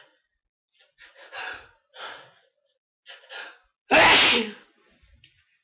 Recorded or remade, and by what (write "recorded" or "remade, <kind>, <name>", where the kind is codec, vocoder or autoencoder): recorded